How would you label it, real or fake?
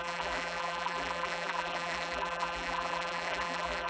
fake